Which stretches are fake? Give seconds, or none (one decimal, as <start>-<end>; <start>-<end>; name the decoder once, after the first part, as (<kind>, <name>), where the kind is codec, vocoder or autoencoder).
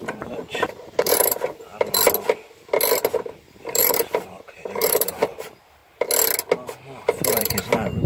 0.0-1.7 (vocoder, BigVGAN v2); 3.4-5.8; 7.0-8.1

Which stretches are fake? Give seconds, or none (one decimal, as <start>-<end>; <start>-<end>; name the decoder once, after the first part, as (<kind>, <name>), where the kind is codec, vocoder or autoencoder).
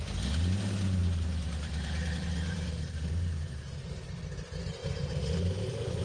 1.0-3.6 (vocoder, BigVGAN v2); 4.8-6.0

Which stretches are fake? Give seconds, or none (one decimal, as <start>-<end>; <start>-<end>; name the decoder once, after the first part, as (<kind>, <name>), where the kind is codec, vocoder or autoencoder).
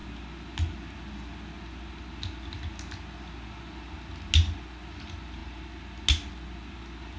none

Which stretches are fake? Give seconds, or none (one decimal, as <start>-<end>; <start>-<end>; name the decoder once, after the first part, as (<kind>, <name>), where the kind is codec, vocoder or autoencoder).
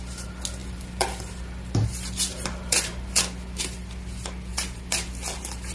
0.6-3.1 (vocoder, BigVGAN v2); 4.5-5.1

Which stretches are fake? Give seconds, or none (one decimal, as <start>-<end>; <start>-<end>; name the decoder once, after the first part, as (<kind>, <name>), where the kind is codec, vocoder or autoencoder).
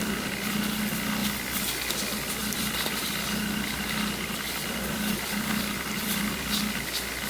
0.0-0.5 (vocoder, BigVGAN v2); 1.2-1.9; 2.4-6.6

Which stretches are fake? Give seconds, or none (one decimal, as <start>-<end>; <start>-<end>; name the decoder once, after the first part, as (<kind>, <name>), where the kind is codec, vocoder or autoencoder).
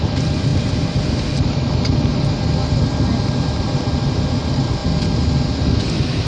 0.0-0.5 (vocoder, BigVGAN v2); 4.1-4.8; 5.8-6.3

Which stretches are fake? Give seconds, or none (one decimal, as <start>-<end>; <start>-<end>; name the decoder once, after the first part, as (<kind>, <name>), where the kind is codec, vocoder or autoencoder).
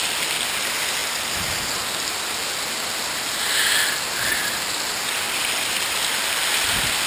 none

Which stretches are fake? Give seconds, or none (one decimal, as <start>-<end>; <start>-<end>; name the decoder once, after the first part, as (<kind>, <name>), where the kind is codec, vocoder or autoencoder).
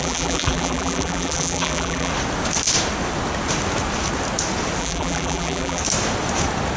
0.0-2.1 (vocoder, BigVGAN v2); 4.8-5.8